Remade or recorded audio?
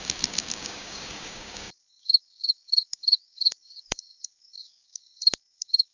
remade